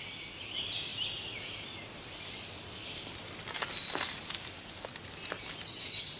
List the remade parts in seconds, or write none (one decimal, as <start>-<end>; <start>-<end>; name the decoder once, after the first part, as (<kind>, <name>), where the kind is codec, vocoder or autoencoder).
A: none